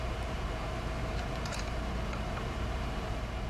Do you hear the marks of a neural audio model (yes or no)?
yes